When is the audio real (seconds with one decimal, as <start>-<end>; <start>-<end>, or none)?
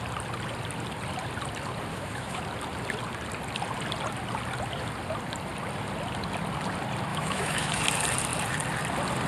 0.0-1.9; 2.4-7.1; 7.8-9.3